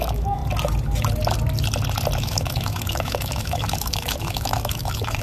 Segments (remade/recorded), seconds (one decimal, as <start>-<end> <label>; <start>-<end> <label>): 0.0-0.4 remade; 0.4-2.2 recorded; 2.2-5.2 remade